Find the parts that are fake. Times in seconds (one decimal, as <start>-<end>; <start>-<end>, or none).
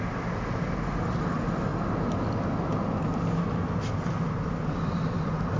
none